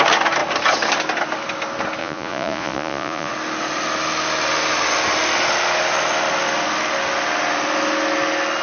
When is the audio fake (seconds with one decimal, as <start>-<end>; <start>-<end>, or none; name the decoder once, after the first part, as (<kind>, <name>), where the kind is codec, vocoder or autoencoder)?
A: 2.0-3.3 (vocoder, Vocos)